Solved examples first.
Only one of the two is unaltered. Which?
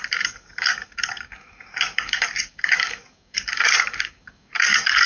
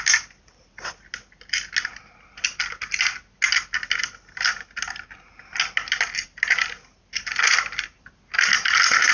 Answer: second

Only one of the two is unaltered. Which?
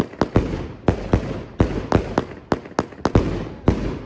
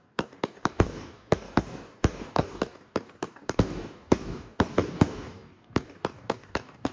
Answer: first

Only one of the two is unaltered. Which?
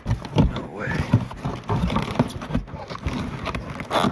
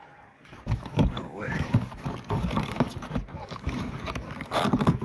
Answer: first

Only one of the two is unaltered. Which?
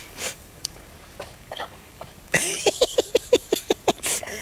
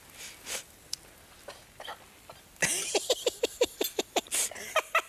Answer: second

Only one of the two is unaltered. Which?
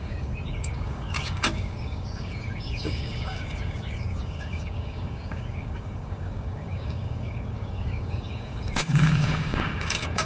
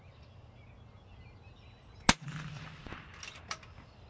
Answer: second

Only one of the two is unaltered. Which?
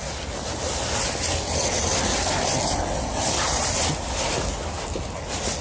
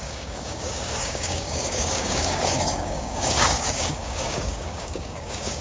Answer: first